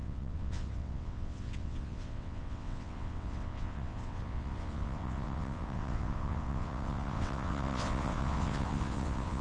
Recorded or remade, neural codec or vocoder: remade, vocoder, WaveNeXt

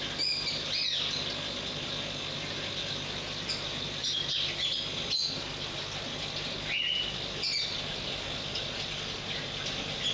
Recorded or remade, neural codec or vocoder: recorded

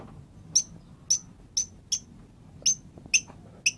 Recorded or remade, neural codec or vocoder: recorded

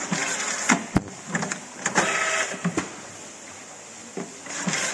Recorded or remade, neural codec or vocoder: recorded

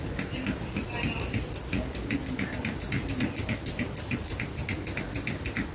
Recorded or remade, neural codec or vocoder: recorded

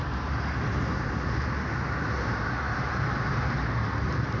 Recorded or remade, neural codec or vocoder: recorded